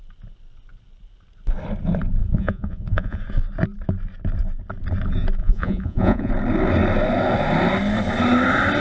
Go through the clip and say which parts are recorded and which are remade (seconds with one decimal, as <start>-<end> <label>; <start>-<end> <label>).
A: 0.0-2.2 recorded; 2.2-3.2 remade; 3.2-5.4 recorded; 5.4-6.3 remade; 6.3-8.8 recorded